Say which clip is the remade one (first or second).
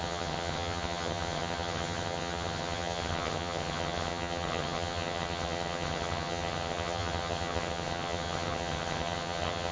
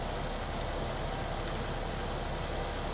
first